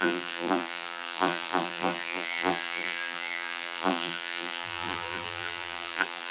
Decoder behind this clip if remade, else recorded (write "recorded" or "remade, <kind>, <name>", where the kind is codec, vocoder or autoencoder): remade, vocoder, BigVGAN v2